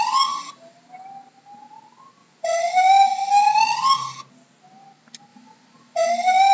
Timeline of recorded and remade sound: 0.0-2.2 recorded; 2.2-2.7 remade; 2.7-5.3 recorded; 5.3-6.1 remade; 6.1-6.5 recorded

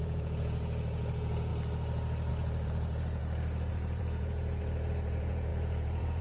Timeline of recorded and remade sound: 0.0-1.5 remade; 1.5-2.3 recorded; 2.3-3.2 remade; 3.2-3.7 recorded; 3.7-6.2 remade

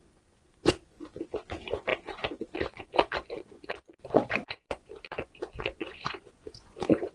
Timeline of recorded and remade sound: 0.0-7.1 remade

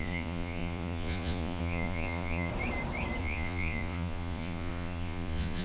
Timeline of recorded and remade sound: 0.0-2.5 remade; 2.5-3.2 recorded; 3.2-5.6 remade

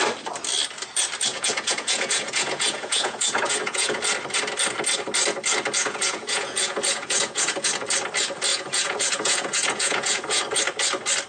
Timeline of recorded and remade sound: 0.0-1.3 recorded; 1.3-4.0 remade; 4.0-5.8 recorded; 5.8-7.7 remade; 7.7-8.5 recorded; 8.5-10.4 remade; 10.4-11.3 recorded

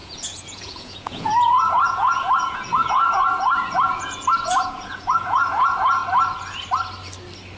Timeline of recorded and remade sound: 0.0-6.0 remade; 6.0-7.6 recorded